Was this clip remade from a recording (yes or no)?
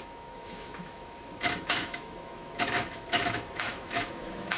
yes